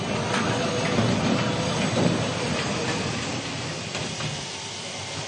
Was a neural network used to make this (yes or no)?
no